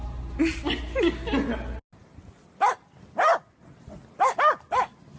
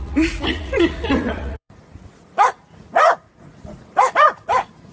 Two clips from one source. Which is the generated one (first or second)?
second